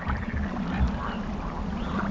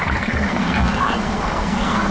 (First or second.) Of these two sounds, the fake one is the second